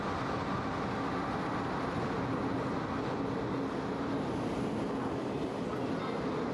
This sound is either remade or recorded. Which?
recorded